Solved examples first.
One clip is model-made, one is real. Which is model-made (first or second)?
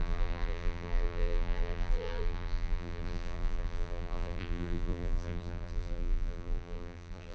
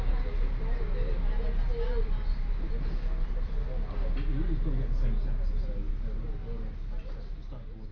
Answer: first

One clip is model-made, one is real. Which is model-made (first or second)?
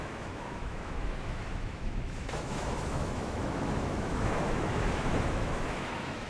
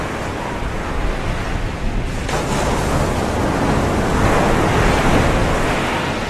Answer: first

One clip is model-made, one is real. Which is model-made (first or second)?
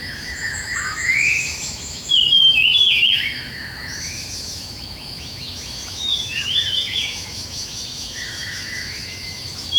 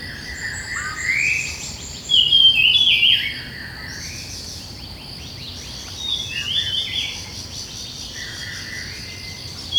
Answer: first